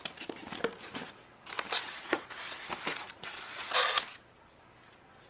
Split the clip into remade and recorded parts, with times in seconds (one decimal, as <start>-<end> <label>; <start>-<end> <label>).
0.0-1.8 recorded; 1.8-2.3 remade; 2.3-2.9 recorded; 2.9-3.8 remade; 3.8-5.3 recorded